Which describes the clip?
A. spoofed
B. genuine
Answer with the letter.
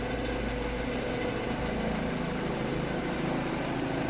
B